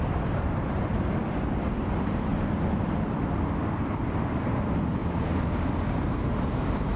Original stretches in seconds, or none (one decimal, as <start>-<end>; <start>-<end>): 5.0-6.5